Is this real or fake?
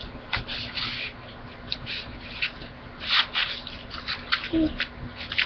real